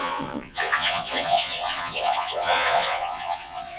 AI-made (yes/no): yes